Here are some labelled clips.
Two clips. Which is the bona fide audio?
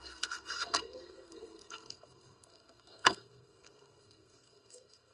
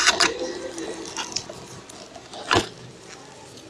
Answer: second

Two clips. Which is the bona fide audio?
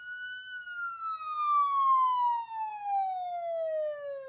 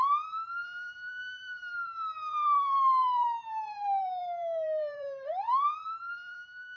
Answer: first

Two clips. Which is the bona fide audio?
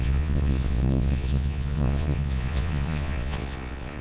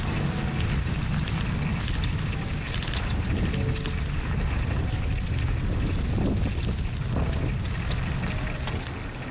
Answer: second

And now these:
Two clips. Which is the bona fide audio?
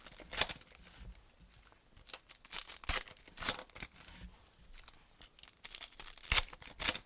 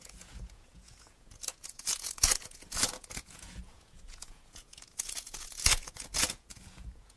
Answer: first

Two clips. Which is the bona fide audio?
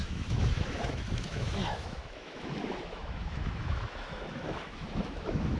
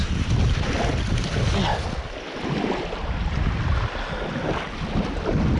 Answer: second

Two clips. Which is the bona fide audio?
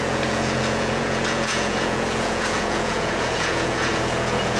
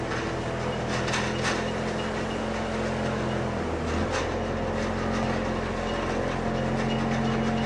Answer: second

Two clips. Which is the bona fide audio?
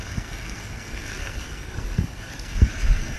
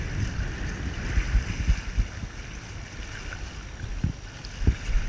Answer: second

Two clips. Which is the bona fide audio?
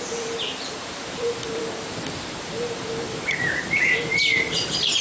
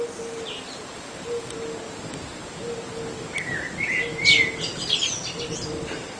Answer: second